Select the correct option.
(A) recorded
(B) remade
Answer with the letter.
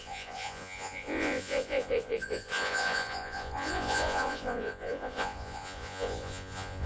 B